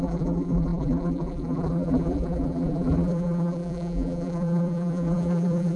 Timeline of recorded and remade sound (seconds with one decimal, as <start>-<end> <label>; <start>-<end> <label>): 0.0-5.8 remade